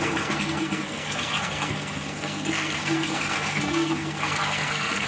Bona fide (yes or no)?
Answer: no